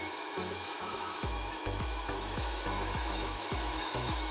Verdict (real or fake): fake